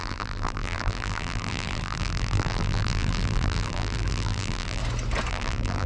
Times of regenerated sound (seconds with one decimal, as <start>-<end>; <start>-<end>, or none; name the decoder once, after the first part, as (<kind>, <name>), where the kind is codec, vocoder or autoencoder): 0.0-4.8 (vocoder, BigVGAN v2); 5.3-5.9